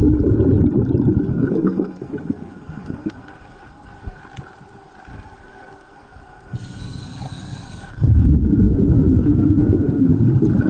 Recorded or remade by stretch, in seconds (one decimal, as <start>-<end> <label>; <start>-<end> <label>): 0.0-1.3 recorded; 1.3-4.2 remade; 4.2-5.1 recorded; 5.1-10.1 remade; 10.1-10.7 recorded